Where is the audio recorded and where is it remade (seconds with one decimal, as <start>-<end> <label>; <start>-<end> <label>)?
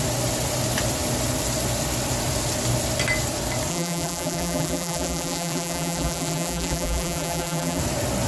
0.0-3.7 recorded; 3.7-7.8 remade; 7.8-8.3 recorded